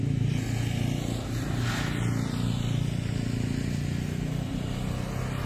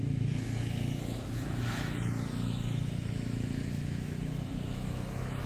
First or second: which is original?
first